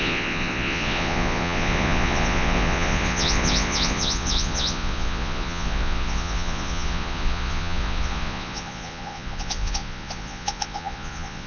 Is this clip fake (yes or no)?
yes